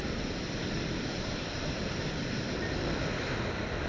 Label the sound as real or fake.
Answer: real